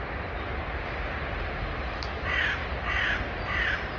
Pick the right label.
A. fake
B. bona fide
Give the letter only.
B